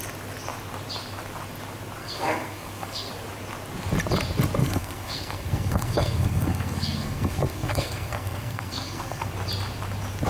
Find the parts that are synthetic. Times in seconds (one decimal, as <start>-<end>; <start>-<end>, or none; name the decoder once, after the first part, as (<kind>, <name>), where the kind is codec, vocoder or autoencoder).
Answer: 2.0-3.1 (codec, SNAC); 4.6-9.3